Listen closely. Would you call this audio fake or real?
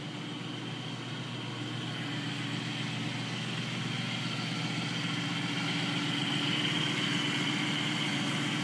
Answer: real